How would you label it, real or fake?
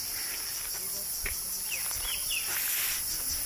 real